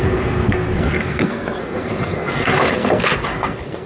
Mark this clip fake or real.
fake